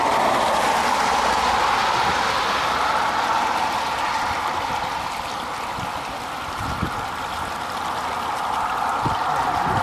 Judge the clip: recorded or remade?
recorded